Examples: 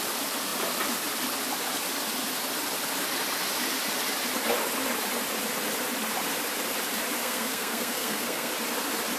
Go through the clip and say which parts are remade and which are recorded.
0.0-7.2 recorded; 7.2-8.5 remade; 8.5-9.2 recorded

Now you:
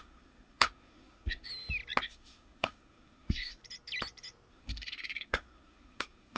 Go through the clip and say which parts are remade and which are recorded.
0.0-1.5 remade; 1.5-2.0 recorded; 2.0-3.6 remade; 3.6-4.5 recorded; 4.5-6.4 remade

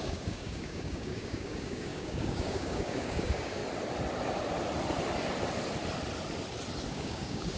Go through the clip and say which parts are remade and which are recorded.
0.0-3.6 remade; 3.6-6.9 recorded; 6.9-7.6 remade

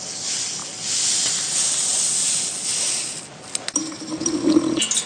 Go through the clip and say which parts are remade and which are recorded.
0.0-5.1 recorded

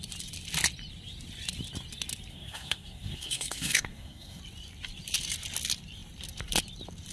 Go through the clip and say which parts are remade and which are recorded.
0.0-2.3 recorded; 2.3-4.4 remade; 4.4-7.1 recorded